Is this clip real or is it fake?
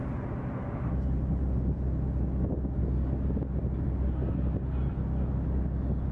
real